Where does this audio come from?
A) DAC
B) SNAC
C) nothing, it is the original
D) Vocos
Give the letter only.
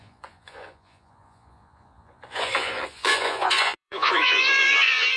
D